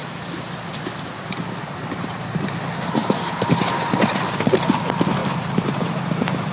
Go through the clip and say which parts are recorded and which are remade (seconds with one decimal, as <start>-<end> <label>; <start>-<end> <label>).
0.0-3.0 recorded; 3.0-3.6 remade; 3.6-5.2 recorded; 5.2-5.9 remade; 5.9-6.5 recorded